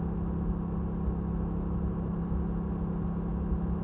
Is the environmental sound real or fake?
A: real